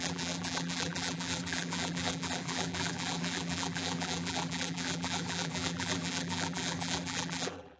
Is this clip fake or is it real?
fake